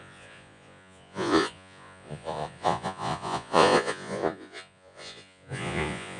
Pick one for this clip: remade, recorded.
remade